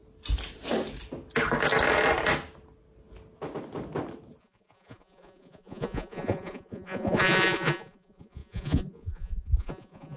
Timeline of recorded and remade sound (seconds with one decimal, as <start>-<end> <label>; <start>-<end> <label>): 0.0-4.4 recorded; 4.4-10.2 remade